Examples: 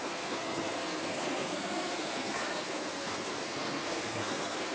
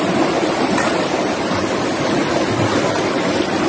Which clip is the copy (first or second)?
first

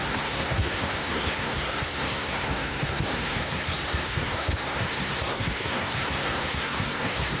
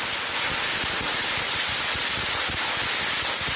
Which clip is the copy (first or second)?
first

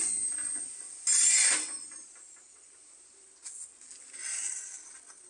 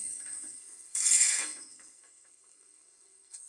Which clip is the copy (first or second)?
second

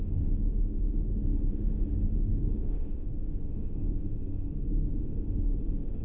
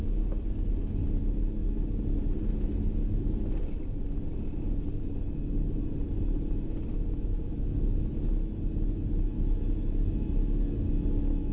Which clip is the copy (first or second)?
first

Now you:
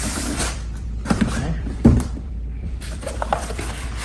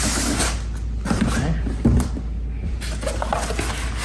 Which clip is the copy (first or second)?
first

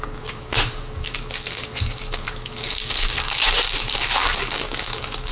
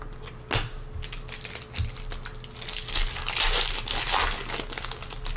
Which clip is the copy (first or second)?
first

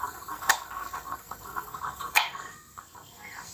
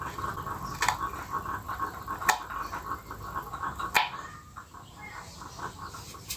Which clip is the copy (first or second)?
first